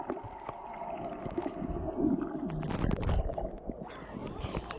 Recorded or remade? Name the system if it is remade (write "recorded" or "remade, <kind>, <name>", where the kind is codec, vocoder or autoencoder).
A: recorded